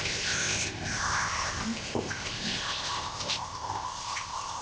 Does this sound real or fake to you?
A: fake